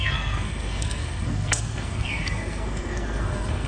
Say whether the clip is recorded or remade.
remade